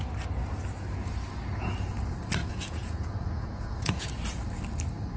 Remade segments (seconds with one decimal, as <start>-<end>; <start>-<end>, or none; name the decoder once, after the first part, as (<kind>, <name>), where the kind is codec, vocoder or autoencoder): 2.4-4.2 (vocoder, Vocos)